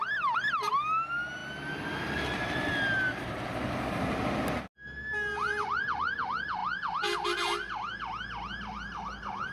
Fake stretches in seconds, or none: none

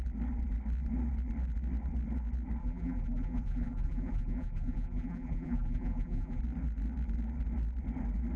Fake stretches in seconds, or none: 2.6-6.4

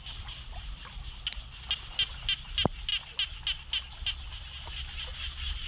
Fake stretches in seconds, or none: none

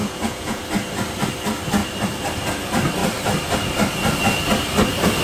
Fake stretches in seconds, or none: 0.0-0.6